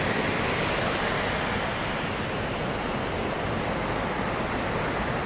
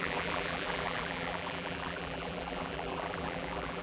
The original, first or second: first